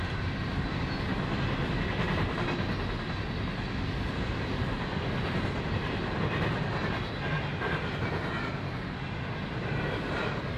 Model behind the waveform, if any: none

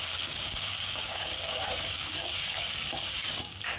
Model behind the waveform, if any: codec, DAC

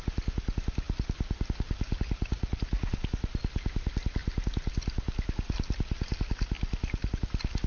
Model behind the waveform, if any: none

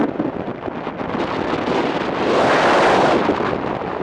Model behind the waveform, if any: none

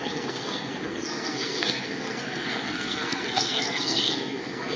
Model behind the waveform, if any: codec, SNAC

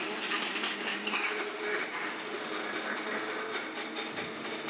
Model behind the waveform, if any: none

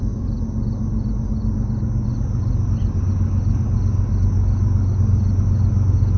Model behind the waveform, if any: none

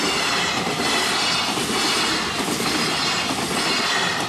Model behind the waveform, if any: none